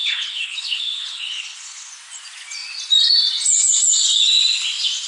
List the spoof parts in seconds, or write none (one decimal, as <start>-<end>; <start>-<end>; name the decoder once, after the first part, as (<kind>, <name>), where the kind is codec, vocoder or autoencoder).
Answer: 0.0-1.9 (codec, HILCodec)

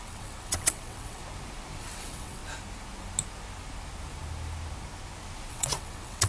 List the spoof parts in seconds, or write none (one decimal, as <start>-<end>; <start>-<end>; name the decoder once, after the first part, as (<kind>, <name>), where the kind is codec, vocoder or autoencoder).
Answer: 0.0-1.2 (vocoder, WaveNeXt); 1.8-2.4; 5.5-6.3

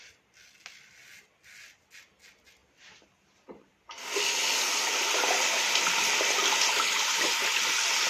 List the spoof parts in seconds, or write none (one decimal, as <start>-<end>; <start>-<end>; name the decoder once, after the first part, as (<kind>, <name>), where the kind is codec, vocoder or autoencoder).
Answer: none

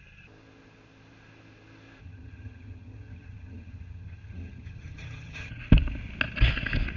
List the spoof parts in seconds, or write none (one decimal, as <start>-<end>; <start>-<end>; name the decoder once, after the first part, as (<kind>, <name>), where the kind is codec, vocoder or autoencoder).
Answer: 2.0-5.6 (vocoder, HiFi-GAN)